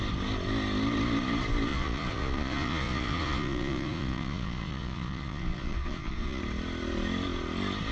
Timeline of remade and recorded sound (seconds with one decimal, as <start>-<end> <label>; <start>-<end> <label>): 0.0-1.7 recorded; 1.7-6.4 remade; 6.4-7.9 recorded